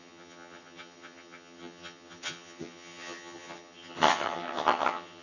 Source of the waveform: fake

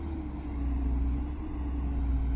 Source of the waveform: real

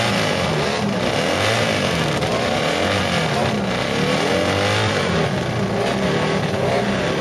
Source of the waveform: real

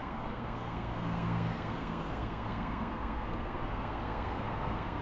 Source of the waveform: fake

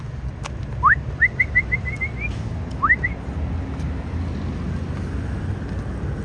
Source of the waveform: real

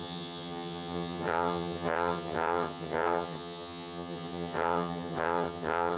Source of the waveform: fake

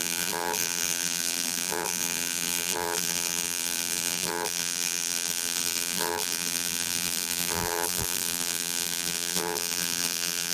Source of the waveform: fake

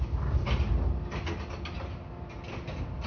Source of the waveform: real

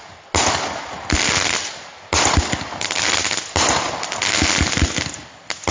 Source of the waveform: real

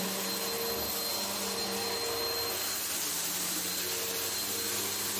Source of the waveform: real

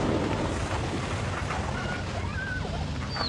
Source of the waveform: real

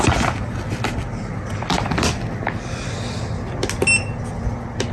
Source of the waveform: real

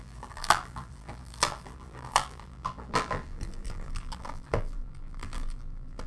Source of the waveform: fake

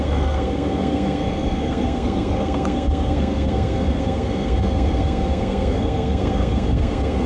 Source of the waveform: fake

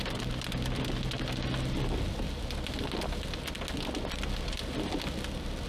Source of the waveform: real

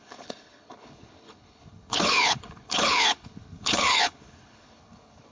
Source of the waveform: fake